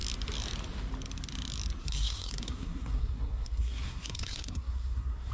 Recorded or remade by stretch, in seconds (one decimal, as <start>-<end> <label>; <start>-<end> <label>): 0.0-1.8 recorded; 1.8-5.3 remade